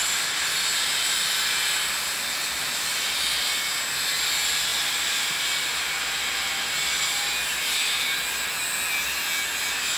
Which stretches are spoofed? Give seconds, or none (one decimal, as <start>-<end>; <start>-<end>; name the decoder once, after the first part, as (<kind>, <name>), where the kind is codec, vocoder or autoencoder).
4.7-5.3 (vocoder, BigVGAN v2)